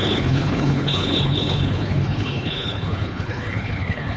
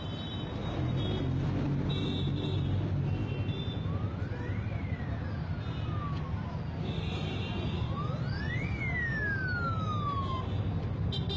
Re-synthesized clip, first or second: first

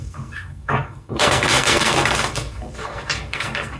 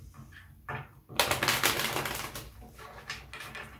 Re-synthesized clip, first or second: first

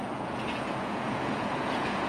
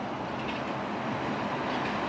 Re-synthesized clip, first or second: first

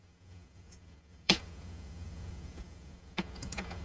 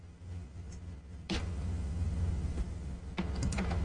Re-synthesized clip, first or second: first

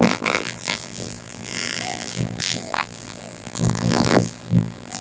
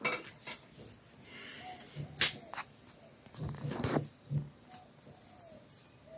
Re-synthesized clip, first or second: first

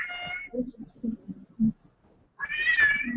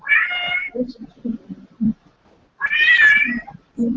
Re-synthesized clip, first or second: second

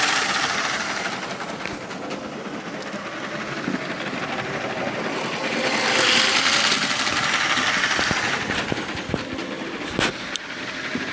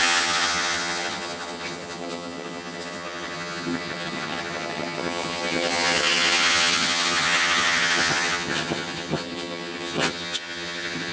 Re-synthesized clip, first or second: second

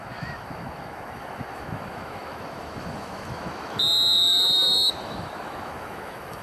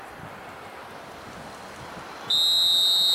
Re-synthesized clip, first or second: first